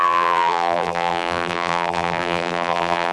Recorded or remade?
remade